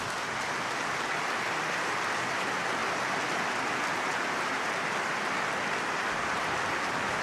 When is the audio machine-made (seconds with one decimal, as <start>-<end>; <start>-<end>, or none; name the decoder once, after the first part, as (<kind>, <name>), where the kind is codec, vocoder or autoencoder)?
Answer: none